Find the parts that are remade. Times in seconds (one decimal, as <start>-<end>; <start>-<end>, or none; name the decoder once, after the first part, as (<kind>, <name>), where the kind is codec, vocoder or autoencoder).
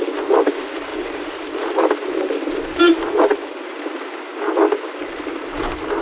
none